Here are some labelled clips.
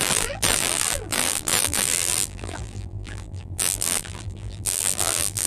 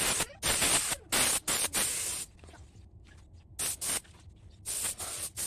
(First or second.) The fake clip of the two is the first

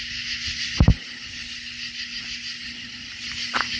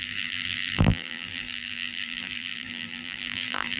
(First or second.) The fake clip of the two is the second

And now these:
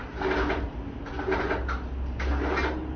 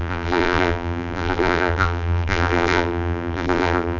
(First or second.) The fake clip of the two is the second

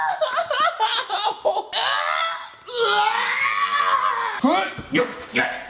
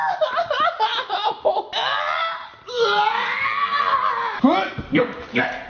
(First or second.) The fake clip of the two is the second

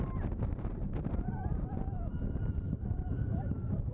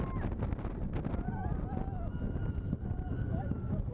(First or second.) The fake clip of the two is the first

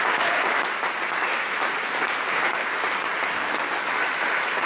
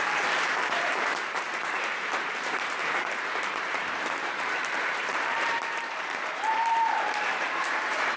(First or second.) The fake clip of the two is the second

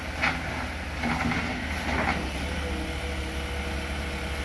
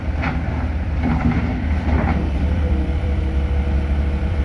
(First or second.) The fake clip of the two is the second